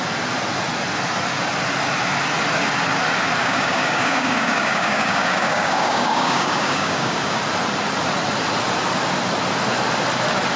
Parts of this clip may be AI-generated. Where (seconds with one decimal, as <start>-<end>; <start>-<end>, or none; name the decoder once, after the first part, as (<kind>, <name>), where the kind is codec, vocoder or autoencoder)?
3.4-7.4 (codec, DAC)